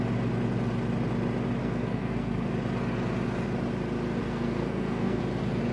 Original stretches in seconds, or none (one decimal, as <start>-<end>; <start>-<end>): 0.0-1.6; 2.5-4.2; 5.2-5.7